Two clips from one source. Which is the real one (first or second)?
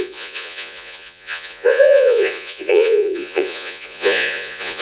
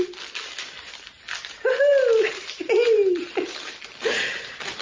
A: second